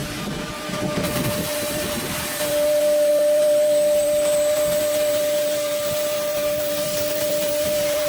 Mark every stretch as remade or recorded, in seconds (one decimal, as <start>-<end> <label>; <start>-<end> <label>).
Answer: 0.0-8.1 remade